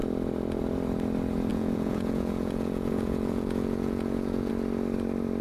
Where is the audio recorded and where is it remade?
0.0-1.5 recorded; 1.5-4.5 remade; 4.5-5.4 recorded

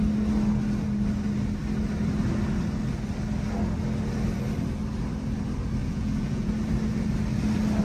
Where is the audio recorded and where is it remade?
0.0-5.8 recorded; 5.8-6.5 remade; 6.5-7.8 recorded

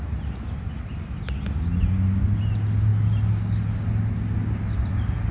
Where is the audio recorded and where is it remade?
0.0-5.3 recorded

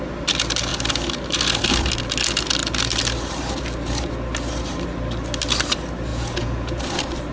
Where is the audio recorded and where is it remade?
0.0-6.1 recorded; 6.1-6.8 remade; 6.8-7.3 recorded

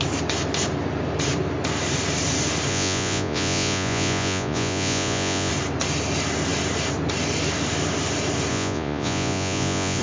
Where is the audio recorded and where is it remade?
0.0-2.7 recorded; 2.7-5.5 remade; 5.5-8.5 recorded; 8.5-10.0 remade

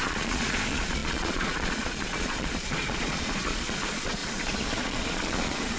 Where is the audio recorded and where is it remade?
0.0-4.2 remade; 4.2-4.8 recorded; 4.8-5.8 remade

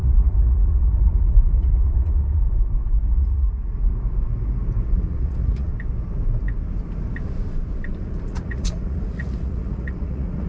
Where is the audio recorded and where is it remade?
0.0-2.4 remade; 2.4-3.0 recorded; 3.0-3.9 remade; 3.9-4.9 recorded; 4.9-5.7 remade; 5.7-8.0 recorded; 8.0-10.5 remade

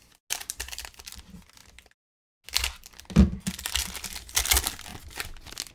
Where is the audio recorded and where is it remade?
0.0-5.7 recorded